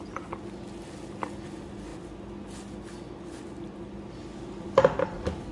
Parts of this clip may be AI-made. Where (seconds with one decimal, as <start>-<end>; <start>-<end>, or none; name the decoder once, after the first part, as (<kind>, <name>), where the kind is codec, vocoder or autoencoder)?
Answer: none